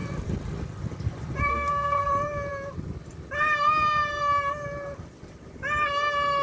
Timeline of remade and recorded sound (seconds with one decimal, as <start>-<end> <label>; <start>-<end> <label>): 0.0-1.5 recorded; 1.5-2.1 remade; 2.1-6.4 recorded

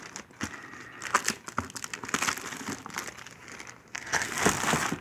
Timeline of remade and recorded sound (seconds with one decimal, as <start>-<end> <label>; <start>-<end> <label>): 0.0-3.9 recorded; 3.9-4.4 remade; 4.4-5.0 recorded